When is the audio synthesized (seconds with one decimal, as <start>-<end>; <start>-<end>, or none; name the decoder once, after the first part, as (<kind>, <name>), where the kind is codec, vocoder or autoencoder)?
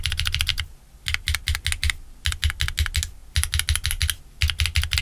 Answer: none